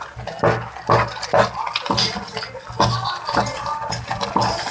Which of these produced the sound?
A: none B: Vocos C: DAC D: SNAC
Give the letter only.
A